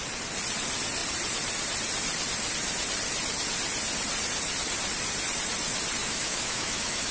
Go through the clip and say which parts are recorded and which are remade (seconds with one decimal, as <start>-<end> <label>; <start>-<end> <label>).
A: 0.0-6.0 recorded; 6.0-7.1 remade